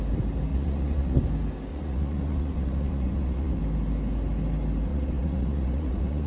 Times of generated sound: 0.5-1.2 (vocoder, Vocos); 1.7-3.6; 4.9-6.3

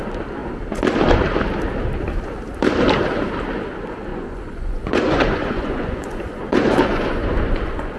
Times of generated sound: 4.1-8.0 (vocoder, Vocos)

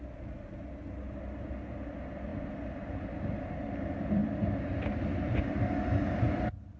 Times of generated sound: none